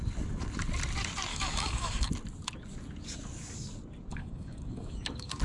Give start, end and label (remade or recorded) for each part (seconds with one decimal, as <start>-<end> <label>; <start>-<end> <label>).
0.0-1.3 recorded; 1.3-2.1 remade; 2.1-4.1 recorded; 4.1-5.4 remade